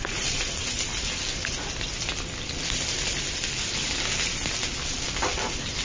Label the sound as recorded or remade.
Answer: recorded